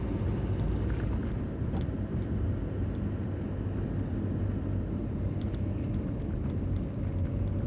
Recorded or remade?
recorded